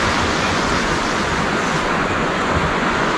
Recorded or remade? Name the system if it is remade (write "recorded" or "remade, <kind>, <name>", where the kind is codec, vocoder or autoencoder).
remade, vocoder, Vocos